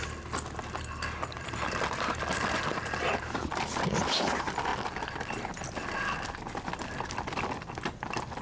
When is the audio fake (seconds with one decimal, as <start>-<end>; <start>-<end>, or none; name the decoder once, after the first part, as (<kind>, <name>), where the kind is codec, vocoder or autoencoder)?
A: none